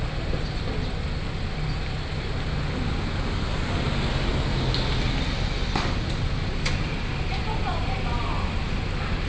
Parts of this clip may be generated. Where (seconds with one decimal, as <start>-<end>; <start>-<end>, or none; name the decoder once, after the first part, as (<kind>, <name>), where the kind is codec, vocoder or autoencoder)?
none